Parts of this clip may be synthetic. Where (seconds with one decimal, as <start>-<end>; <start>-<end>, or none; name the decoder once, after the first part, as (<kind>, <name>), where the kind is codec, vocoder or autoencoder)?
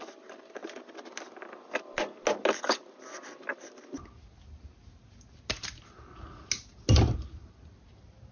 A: none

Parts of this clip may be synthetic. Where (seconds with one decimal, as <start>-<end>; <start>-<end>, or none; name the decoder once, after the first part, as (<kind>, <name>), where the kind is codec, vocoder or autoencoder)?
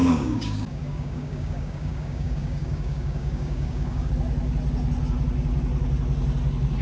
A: 0.0-4.1 (codec, DAC)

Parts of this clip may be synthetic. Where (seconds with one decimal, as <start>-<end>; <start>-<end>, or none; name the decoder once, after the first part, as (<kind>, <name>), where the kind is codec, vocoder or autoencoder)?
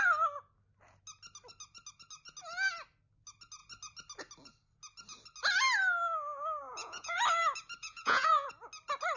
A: 6.7-7.2 (vocoder, Vocos); 7.8-8.5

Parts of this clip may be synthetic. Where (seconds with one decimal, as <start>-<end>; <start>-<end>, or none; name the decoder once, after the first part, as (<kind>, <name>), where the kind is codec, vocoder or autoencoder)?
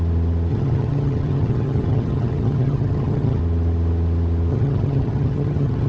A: 0.5-3.4 (vocoder, HiFi-GAN); 4.5-5.9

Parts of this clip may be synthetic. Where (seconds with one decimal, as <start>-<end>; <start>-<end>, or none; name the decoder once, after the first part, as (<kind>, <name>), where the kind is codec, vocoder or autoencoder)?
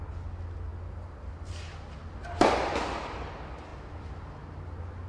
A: none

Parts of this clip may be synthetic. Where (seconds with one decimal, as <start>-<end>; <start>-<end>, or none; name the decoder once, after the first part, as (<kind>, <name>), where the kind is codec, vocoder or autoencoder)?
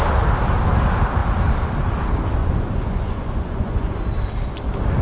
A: 2.4-4.0 (vocoder, Vocos)